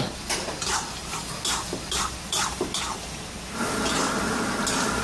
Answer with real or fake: real